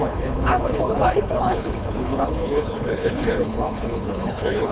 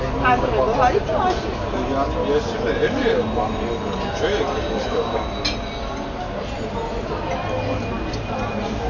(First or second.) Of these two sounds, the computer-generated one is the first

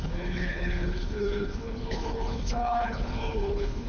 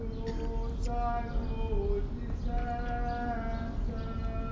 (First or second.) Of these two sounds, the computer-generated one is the first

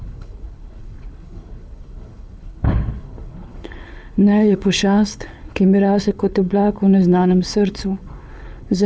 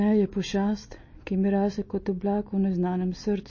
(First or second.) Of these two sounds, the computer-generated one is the first